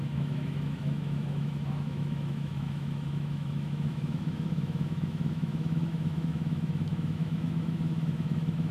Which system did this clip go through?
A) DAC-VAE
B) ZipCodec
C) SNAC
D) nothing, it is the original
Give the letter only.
A